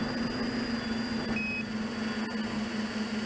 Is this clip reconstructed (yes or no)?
no